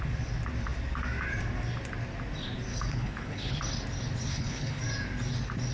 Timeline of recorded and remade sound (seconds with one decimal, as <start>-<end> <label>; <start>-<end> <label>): 0.0-2.7 recorded; 2.7-3.6 remade; 3.6-4.3 recorded; 4.3-4.8 remade; 4.8-5.7 recorded

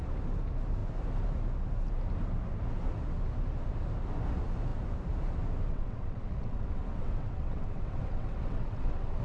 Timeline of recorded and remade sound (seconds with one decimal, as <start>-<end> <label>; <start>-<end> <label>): 0.0-5.7 recorded; 5.7-9.2 remade

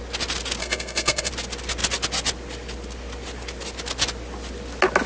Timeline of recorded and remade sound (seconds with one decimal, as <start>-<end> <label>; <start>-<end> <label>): 0.0-0.6 recorded; 0.6-1.3 remade; 1.3-5.1 recorded

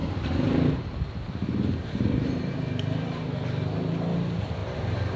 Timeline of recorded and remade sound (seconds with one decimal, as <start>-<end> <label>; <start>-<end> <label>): 0.0-3.1 remade; 3.1-4.6 recorded; 4.6-5.2 remade

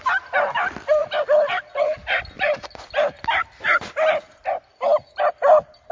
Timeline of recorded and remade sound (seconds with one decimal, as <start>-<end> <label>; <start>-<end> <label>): 0.0-5.9 recorded